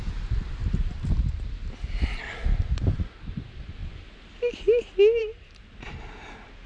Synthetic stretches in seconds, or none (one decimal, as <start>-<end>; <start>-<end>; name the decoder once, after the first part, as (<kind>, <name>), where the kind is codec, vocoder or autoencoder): 0.6-1.1 (vocoder, BigVGAN v2); 5.2-6.7